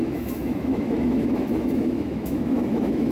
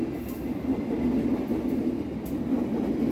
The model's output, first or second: first